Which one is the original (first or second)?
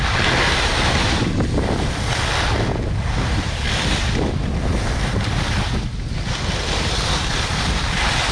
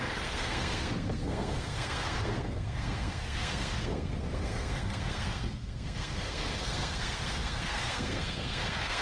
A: first